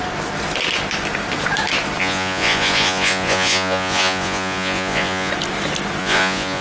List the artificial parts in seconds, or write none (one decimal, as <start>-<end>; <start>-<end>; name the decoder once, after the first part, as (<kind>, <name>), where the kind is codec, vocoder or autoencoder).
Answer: 2.0-5.3 (vocoder, Vocos); 6.0-6.6